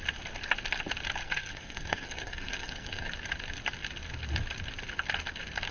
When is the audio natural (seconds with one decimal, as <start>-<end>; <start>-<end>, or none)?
0.0-1.2; 3.1-5.7

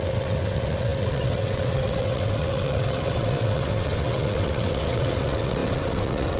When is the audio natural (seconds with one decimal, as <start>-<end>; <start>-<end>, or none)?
none